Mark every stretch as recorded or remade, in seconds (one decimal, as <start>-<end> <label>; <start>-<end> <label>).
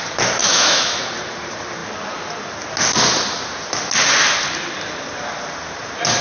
0.0-0.4 recorded; 0.4-1.0 remade; 1.0-6.2 recorded